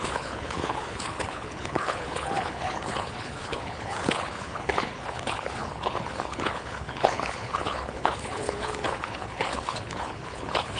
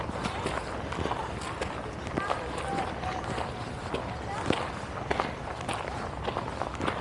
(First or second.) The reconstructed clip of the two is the first